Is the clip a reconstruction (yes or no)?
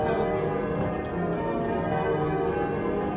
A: no